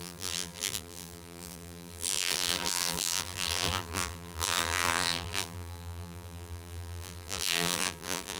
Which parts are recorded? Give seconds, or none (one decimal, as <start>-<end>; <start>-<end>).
none